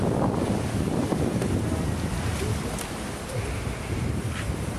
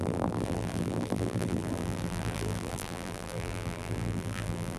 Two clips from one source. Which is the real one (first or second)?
first